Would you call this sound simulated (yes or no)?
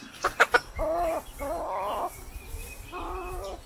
no